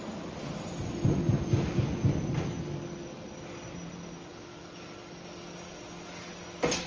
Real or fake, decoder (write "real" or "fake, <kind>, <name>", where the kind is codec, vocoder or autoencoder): real